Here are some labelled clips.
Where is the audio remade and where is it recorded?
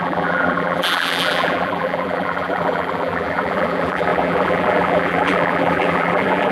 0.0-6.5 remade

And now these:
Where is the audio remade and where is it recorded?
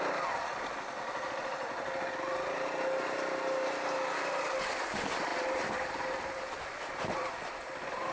0.0-5.3 recorded; 5.3-7.3 remade; 7.3-8.1 recorded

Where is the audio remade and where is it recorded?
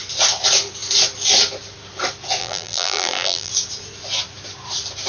0.0-2.4 recorded; 2.4-3.5 remade; 3.5-5.1 recorded